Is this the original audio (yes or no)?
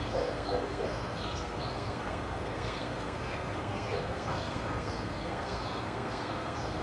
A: no